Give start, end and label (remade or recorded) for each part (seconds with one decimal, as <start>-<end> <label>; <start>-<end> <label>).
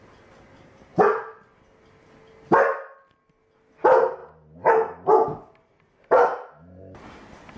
0.0-7.6 recorded